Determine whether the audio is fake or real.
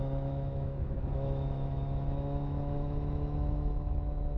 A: fake